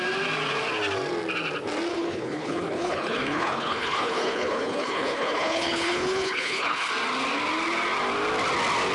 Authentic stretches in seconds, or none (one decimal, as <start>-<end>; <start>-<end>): 0.0-1.9; 6.9-8.9